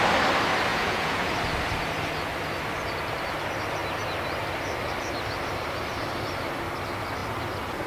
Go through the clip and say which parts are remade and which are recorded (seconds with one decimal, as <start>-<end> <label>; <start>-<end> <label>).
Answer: 0.0-0.7 recorded; 0.7-1.3 remade; 1.3-7.9 recorded